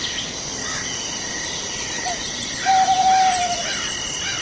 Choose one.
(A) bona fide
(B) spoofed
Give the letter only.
A